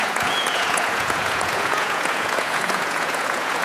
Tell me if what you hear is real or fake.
fake